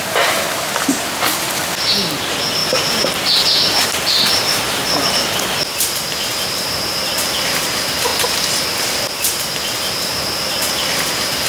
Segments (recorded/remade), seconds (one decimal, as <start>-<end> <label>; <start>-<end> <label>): 0.0-11.5 recorded